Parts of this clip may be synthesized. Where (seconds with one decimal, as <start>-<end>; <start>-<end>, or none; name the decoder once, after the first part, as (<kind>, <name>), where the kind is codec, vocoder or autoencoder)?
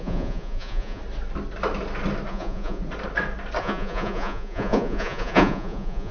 0.0-1.0 (vocoder, Vocos); 2.3-2.8; 3.6-6.1